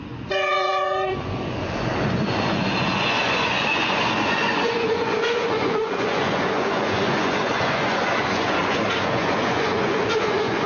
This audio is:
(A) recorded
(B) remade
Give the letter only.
B